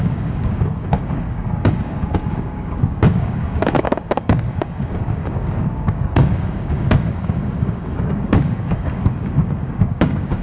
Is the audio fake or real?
fake